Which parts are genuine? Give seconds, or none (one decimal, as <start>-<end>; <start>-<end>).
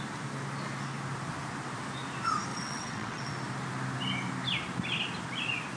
0.0-2.5; 3.3-5.8